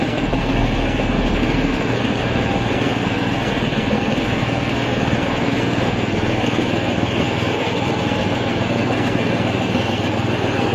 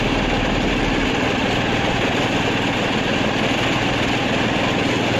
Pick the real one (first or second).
second